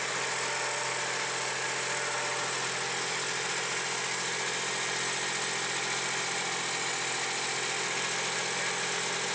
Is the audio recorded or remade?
recorded